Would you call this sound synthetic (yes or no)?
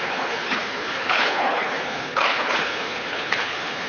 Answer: yes